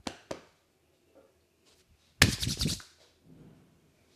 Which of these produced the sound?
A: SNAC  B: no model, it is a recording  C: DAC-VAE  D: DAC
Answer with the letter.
B